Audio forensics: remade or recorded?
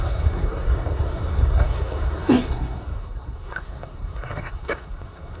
remade